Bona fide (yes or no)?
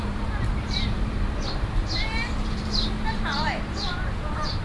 no